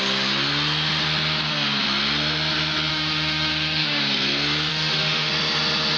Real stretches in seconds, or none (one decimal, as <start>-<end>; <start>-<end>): 0.0-2.9; 4.0-4.7; 5.3-6.0